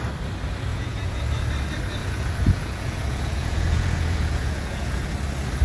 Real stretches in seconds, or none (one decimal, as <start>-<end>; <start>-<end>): 0.0-0.7; 1.2-2.0; 5.1-5.6